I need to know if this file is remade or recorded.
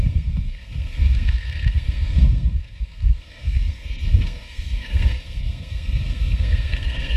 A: remade